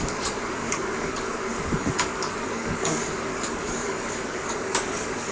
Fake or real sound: fake